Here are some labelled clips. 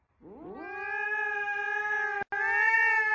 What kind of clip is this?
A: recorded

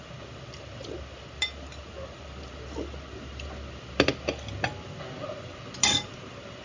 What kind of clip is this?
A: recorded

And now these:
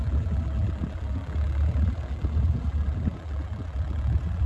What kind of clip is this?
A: remade